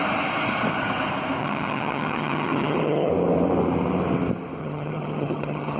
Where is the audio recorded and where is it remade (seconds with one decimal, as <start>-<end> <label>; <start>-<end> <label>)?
0.0-1.4 recorded; 1.4-3.1 remade; 3.1-4.6 recorded; 4.6-5.8 remade